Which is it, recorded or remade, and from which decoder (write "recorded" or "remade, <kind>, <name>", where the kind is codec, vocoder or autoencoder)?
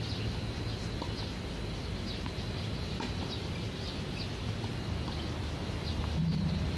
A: recorded